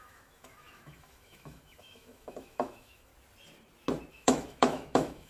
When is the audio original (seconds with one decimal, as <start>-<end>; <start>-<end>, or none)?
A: 3.1-4.1

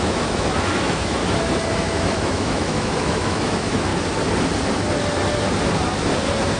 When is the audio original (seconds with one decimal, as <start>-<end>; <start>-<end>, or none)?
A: 1.2-1.8; 3.9-6.6

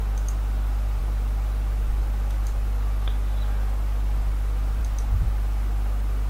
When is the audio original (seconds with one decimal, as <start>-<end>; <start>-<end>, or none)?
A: 0.0-6.3